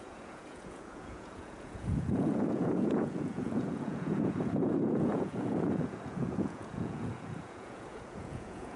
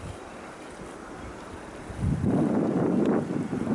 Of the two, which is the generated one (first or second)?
first